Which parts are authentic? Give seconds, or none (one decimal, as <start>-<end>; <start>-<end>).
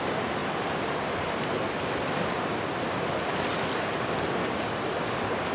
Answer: 0.0-4.4